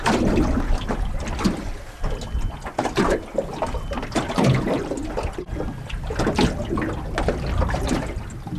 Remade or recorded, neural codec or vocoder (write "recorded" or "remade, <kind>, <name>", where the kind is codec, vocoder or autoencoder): recorded